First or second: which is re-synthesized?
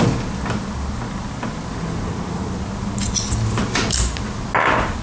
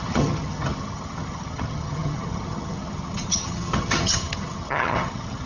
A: second